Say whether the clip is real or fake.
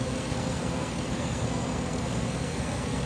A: fake